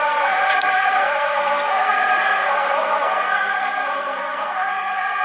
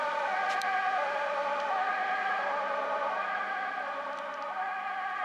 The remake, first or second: first